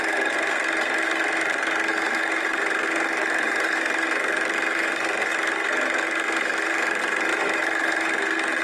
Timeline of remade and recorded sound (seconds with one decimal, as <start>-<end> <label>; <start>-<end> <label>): 0.0-8.6 remade